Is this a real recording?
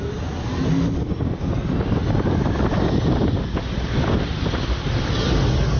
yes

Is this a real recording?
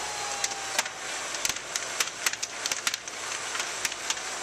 yes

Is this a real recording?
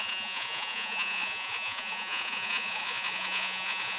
no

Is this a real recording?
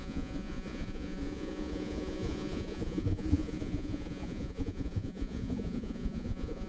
no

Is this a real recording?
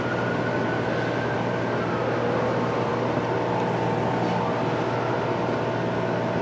yes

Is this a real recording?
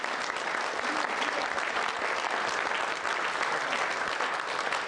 yes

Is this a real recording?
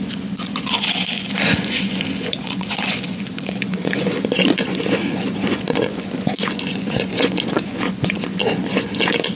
no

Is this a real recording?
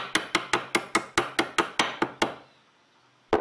yes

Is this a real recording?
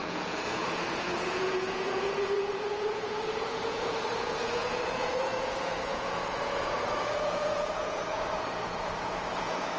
no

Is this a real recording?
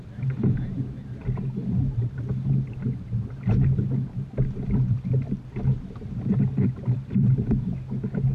yes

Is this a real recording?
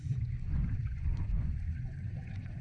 no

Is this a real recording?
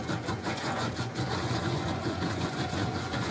no